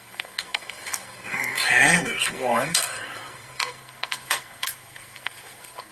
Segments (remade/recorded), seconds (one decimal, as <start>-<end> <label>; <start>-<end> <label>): 0.0-5.9 remade